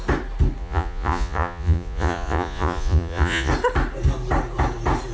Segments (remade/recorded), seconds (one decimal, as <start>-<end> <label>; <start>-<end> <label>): 0.0-0.6 recorded; 0.6-3.5 remade; 3.5-5.1 recorded